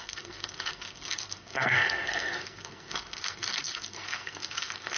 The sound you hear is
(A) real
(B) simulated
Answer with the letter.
B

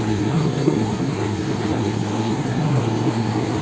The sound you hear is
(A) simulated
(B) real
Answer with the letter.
A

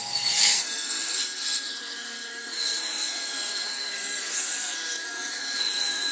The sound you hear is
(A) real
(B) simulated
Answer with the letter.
B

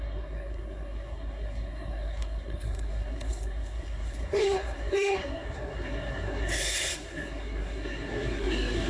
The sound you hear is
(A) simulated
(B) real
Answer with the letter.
A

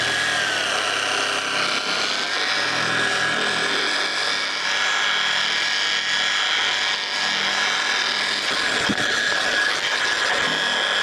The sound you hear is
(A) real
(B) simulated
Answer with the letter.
A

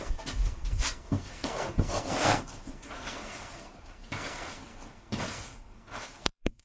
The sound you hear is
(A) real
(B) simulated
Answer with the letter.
B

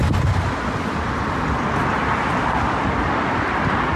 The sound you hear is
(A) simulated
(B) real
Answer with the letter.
B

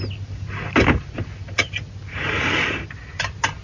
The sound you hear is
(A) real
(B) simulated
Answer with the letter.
A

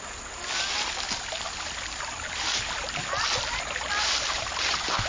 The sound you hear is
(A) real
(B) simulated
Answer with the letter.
A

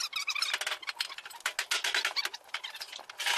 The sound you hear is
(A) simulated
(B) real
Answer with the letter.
B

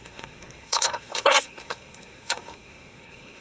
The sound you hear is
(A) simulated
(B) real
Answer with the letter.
A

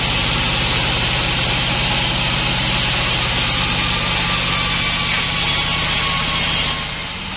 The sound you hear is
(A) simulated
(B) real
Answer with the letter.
B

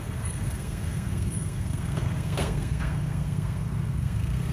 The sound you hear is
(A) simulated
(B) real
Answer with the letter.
A